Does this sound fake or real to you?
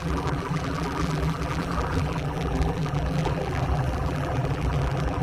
fake